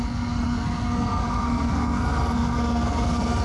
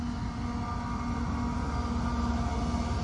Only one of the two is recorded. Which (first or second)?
second